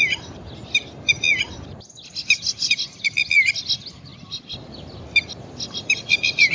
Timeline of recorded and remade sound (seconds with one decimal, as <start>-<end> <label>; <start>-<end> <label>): 0.0-6.5 recorded